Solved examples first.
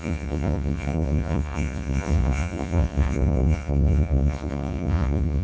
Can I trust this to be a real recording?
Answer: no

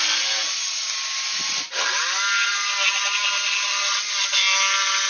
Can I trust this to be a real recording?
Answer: yes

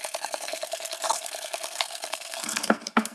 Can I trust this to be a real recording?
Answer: no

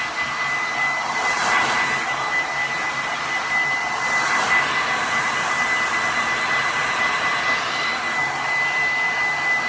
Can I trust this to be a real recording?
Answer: yes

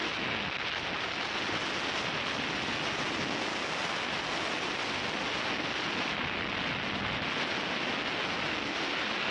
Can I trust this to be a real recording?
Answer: yes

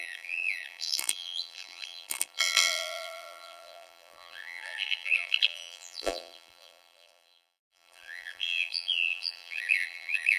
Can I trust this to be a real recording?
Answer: no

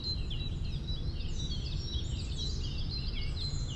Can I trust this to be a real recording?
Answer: yes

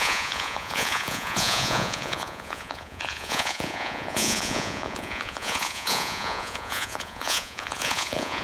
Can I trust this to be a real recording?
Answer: no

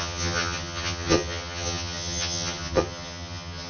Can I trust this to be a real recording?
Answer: no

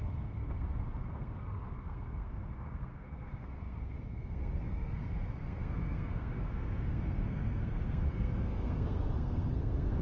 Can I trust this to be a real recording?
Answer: no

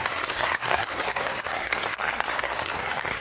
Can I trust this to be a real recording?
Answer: no